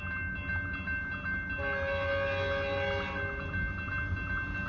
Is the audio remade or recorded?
recorded